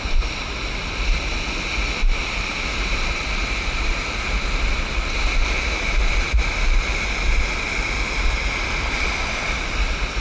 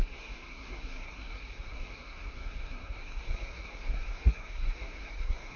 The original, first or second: first